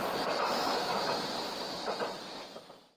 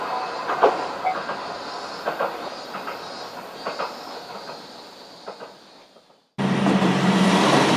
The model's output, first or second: first